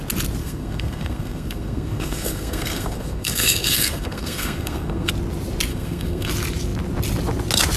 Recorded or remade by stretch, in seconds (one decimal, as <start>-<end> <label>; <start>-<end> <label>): 0.0-0.4 recorded; 0.4-5.1 remade; 5.1-5.7 recorded; 5.7-6.3 remade; 6.3-7.8 recorded